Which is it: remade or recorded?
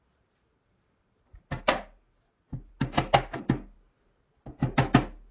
recorded